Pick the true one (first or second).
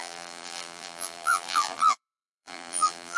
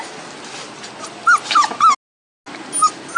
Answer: second